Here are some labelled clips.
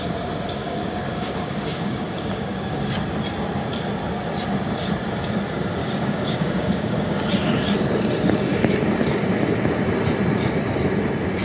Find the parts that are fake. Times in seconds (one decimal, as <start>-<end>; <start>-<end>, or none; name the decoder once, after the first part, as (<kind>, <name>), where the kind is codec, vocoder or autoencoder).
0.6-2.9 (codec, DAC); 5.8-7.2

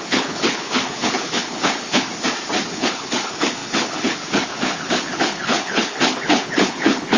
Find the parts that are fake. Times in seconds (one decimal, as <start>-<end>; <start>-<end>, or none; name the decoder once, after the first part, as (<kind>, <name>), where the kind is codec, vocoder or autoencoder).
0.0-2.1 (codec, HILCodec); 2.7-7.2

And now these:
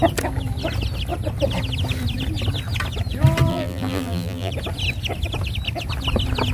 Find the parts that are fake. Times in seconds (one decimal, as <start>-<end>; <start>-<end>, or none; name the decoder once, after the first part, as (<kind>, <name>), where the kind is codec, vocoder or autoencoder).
3.5-4.5 (vocoder, BigVGAN v2)

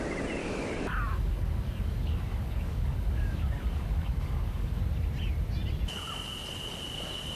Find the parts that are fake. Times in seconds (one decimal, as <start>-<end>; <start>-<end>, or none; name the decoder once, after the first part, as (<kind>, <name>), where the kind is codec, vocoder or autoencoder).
0.4-4.8 (codec, DAC)

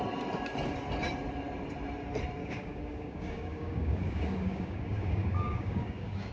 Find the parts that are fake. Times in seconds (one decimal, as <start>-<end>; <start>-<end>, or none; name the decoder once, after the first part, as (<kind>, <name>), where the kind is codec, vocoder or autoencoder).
2.4-6.3 (codec, DAC)